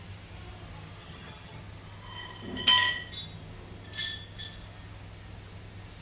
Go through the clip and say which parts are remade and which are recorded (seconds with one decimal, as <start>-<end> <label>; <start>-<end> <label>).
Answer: 0.0-1.0 recorded; 1.0-1.6 remade; 1.6-6.0 recorded